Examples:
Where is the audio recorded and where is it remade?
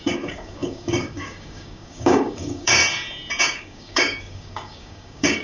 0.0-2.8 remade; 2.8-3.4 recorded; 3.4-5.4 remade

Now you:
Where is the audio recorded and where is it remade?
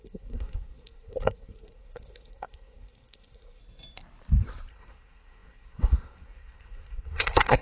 0.0-3.6 remade; 3.6-4.7 recorded; 4.7-7.6 remade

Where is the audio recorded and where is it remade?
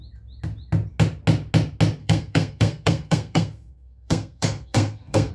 0.0-2.0 recorded; 2.0-5.3 remade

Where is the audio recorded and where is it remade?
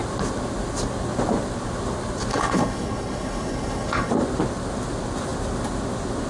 0.0-2.3 recorded; 2.3-4.1 remade; 4.1-6.3 recorded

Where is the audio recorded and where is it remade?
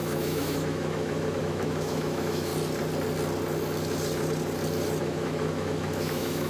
0.0-2.5 remade; 2.5-5.0 recorded; 5.0-6.5 remade